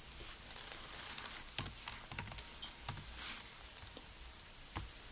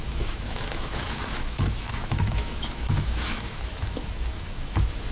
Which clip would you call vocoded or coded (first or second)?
second